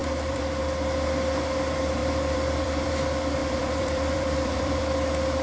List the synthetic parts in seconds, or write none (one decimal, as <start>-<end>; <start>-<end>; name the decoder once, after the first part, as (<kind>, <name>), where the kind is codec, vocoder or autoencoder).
0.0-0.6 (vocoder, BigVGAN v2); 2.0-2.9; 3.4-4.8